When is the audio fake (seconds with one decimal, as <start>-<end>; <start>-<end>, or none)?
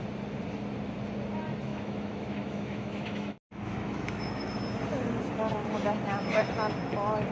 1.7-4.6